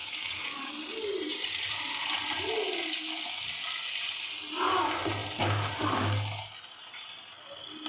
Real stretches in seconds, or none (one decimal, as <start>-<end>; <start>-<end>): 0.7-7.9